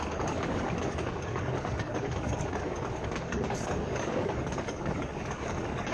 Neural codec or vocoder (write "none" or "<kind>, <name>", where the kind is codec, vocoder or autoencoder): codec, DAC